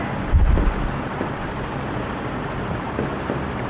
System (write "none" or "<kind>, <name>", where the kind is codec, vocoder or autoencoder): none